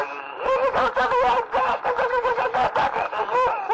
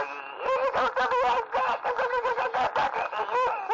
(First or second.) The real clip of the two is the second